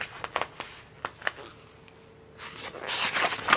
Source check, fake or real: real